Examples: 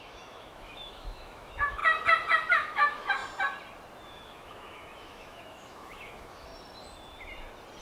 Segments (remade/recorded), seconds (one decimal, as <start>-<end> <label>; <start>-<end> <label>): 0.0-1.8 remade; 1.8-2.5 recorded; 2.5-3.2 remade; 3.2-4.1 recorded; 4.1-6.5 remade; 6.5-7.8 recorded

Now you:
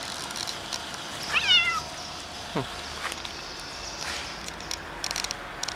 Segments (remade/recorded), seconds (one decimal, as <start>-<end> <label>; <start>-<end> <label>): 0.0-5.8 recorded

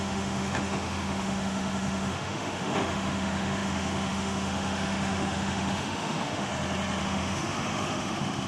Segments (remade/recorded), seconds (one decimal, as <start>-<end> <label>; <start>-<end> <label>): 0.0-6.5 remade; 6.5-7.0 recorded; 7.0-8.5 remade

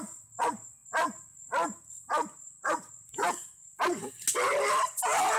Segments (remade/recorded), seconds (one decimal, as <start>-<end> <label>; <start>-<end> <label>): 0.0-5.4 recorded